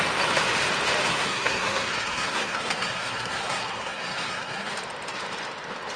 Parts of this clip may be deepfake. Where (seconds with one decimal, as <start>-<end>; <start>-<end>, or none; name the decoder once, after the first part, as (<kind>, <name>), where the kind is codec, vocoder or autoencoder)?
1.1-4.7 (codec, SNAC)